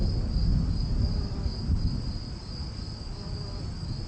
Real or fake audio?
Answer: real